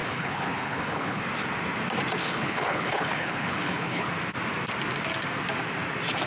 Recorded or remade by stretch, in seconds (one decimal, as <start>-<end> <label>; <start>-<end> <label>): 0.0-1.2 remade; 1.2-2.2 recorded; 2.2-4.1 remade; 4.1-6.3 recorded